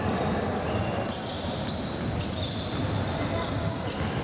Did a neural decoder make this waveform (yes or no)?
no